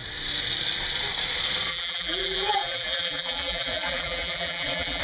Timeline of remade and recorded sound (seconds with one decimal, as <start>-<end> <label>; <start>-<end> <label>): 0.0-1.7 recorded; 1.7-5.0 remade